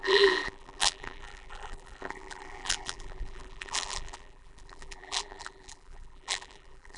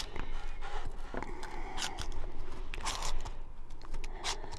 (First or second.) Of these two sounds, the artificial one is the first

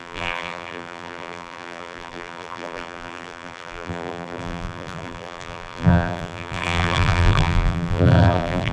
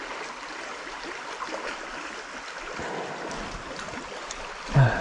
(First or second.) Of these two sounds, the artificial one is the first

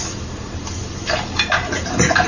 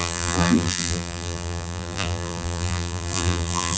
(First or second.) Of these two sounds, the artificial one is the second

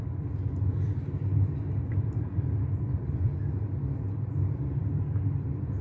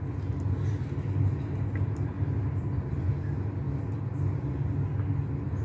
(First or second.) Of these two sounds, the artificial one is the first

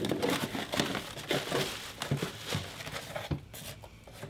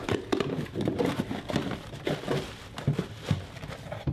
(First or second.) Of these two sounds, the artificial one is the second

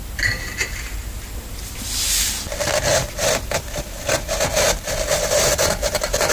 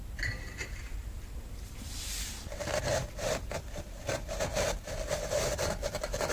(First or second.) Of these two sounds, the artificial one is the second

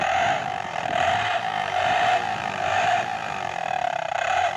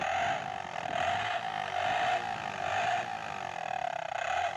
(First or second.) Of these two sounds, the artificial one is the first